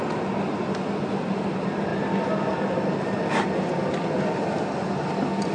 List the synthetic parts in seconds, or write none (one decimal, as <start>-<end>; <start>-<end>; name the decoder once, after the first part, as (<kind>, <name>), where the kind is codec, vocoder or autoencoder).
none